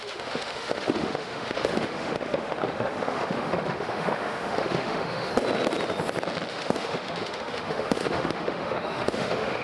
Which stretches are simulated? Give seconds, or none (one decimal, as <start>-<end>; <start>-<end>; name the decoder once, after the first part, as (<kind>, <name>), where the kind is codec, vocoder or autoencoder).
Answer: 0.0-5.3 (autoencoder, DAC-VAE); 6.5-9.6